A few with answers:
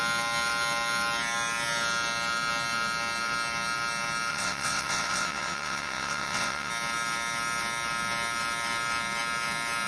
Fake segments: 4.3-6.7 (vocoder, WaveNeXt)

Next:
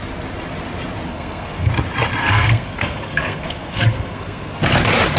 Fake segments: 1.1-1.7 (codec, SNAC); 2.2-4.6

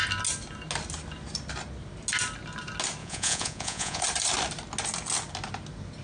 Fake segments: 3.0-4.0 (vocoder, Vocos)

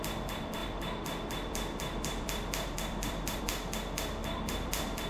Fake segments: 0.6-3.4 (vocoder, BigVGAN v2); 4.2-5.1

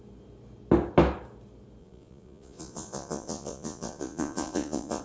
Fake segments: 1.8-5.0 (vocoder, Vocos)

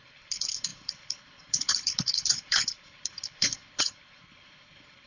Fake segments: 0.0-5.1 (codec, HILCodec)

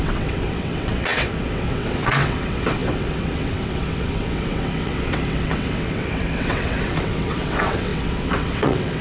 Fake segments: 0.0-9.0 (vocoder, WaveNeXt)